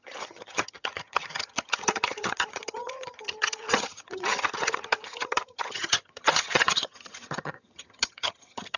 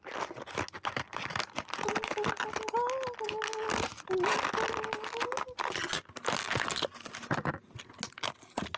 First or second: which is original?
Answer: second